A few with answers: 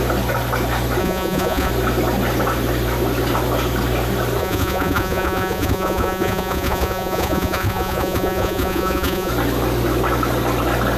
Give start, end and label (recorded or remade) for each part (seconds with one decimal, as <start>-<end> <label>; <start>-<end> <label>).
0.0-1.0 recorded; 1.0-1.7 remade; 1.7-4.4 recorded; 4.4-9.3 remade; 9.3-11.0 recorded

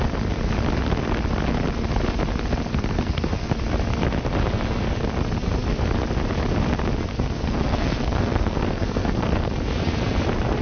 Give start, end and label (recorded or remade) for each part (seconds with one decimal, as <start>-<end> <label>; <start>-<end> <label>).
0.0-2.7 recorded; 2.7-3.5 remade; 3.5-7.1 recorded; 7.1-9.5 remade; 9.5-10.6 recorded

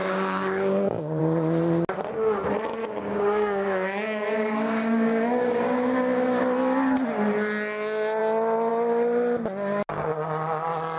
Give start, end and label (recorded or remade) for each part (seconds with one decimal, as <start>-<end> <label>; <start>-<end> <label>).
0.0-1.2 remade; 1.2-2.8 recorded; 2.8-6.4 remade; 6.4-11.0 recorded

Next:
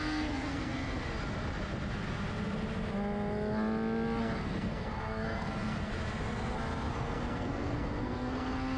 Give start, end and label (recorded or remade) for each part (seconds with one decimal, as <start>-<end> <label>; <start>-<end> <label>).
0.0-0.7 remade; 0.7-4.2 recorded; 4.2-5.9 remade; 5.9-6.9 recorded; 6.9-8.8 remade

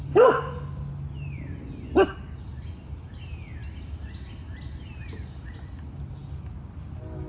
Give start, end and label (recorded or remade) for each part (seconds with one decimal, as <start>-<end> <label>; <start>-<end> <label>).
0.0-7.3 recorded